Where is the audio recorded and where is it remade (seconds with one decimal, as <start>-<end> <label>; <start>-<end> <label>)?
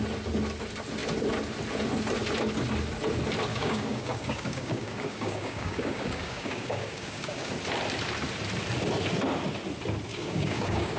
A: 0.0-3.5 recorded; 3.5-7.5 remade; 7.5-10.1 recorded; 10.1-11.0 remade